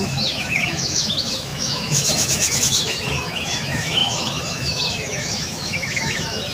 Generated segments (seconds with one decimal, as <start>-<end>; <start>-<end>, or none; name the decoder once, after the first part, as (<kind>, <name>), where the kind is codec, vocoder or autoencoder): 0.0-6.5 (autoencoder, DAC-VAE)